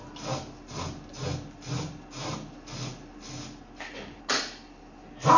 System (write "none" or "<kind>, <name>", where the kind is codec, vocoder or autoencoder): none